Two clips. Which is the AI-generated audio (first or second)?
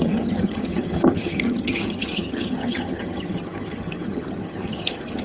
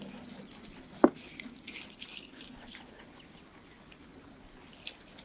first